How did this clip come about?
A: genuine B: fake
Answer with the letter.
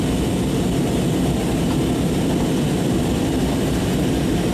A